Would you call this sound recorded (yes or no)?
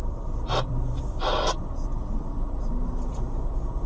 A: no